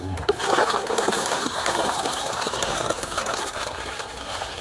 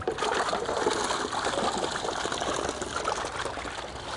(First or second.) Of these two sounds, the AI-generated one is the first